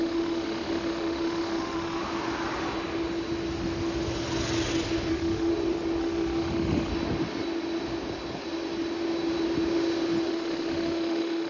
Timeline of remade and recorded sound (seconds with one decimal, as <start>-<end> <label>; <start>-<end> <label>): 0.0-2.0 remade; 2.0-5.1 recorded; 5.1-5.5 remade; 5.5-6.0 recorded; 6.0-6.9 remade; 6.9-10.3 recorded; 10.3-11.5 remade